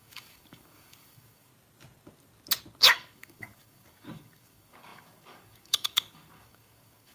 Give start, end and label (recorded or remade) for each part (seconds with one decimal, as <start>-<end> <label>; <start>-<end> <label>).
0.0-1.5 remade; 1.5-2.8 recorded; 2.8-7.1 remade